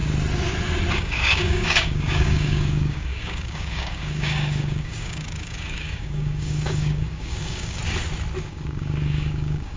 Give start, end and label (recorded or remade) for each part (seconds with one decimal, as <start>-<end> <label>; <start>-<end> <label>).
0.0-0.9 recorded; 0.9-7.8 remade; 7.8-8.4 recorded; 8.4-9.8 remade